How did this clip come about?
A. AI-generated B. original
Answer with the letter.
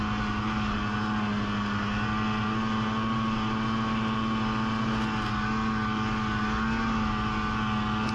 B